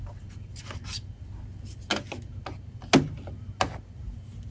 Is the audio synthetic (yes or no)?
no